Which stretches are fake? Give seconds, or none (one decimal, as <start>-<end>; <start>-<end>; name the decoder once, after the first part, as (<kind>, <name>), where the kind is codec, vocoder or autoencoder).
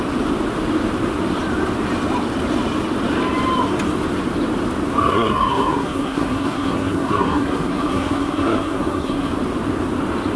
5.0-9.3 (codec, SNAC)